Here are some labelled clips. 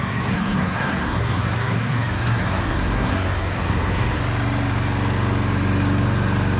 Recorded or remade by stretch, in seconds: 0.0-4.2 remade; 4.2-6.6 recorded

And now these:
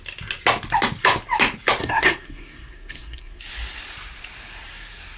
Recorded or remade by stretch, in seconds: 0.0-1.8 recorded; 1.8-3.4 remade; 3.4-5.2 recorded

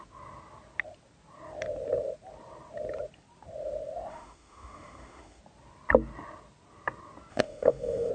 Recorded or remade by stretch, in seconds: 0.0-4.1 recorded; 4.1-5.4 remade; 5.4-7.3 recorded; 7.3-8.1 remade

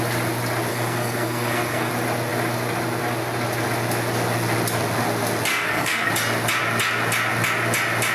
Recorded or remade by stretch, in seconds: 0.0-0.7 recorded; 0.7-1.9 remade; 1.9-5.5 recorded; 5.5-6.1 remade; 6.1-8.1 recorded

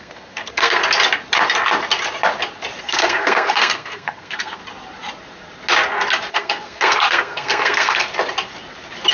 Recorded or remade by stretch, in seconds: 0.0-0.8 remade; 0.8-2.8 recorded; 2.8-4.6 remade; 4.6-6.3 recorded; 6.3-8.1 remade; 8.1-9.1 recorded

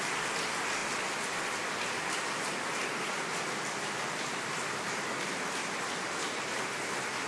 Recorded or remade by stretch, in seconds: 0.0-7.3 recorded

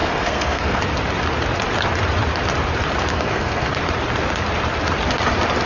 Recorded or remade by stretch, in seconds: 0.0-0.8 remade; 0.8-3.1 recorded; 3.1-3.7 remade; 3.7-5.7 recorded